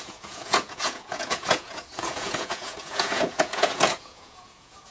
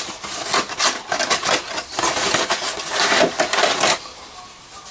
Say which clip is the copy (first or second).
first